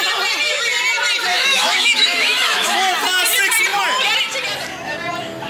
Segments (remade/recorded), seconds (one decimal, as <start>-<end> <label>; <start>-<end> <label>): 0.0-1.3 recorded; 1.3-2.9 remade; 2.9-5.5 recorded